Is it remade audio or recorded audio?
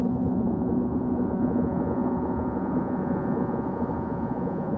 remade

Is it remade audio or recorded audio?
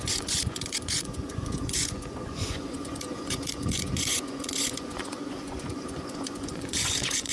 remade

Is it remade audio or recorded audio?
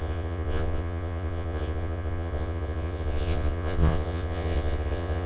remade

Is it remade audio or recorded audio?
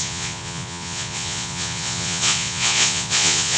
remade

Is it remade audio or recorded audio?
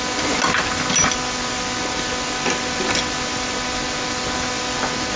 recorded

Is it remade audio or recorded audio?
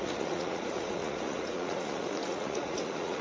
remade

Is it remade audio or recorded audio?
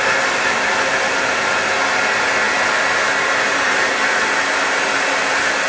recorded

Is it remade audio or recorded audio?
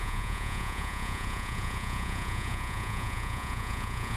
remade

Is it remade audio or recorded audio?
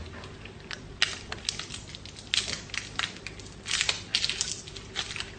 recorded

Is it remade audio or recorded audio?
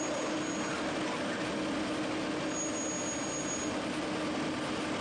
recorded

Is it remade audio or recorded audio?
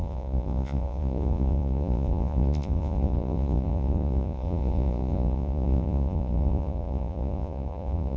remade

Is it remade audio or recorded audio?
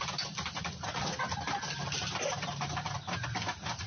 recorded